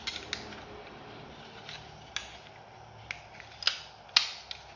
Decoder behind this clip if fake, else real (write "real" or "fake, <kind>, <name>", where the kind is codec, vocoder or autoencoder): real